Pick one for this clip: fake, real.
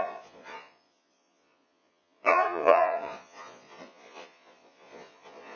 fake